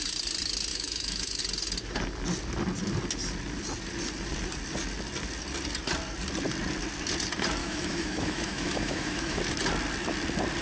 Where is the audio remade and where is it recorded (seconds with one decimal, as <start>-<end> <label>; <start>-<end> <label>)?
0.0-0.7 recorded; 0.7-1.4 remade; 1.4-7.6 recorded; 7.6-9.4 remade; 9.4-10.6 recorded